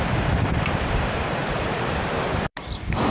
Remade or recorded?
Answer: remade